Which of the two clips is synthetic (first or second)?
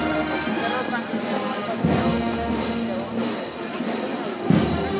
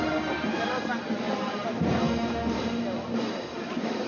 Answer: second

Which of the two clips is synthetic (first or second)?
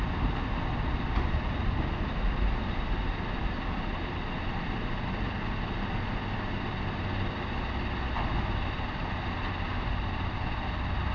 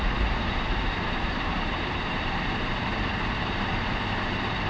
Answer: second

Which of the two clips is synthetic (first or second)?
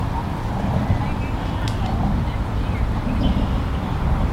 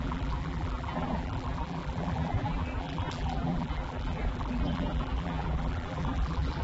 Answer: second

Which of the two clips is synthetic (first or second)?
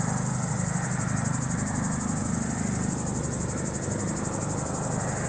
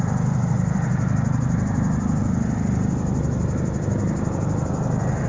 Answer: second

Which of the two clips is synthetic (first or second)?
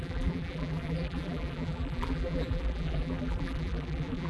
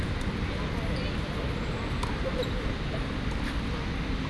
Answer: first